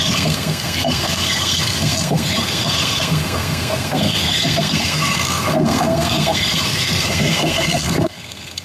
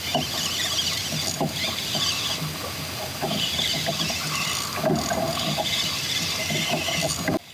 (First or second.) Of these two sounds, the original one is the second